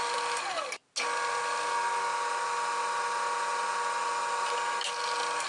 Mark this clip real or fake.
real